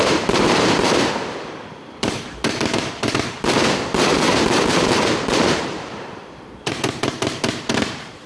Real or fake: fake